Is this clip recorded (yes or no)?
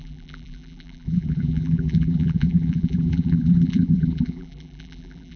no